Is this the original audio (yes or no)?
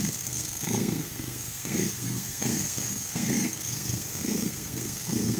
no